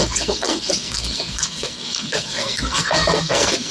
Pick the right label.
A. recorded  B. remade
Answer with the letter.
B